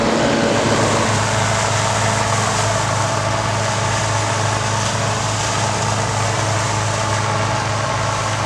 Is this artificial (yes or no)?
no